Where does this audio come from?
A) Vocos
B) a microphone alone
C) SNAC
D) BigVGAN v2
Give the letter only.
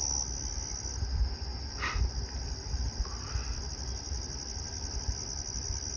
B